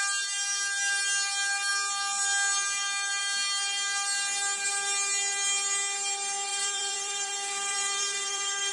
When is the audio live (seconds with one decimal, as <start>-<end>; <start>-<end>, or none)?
0.0-6.5